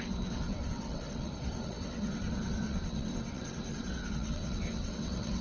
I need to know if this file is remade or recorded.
remade